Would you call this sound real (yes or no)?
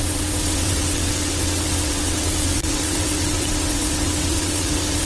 no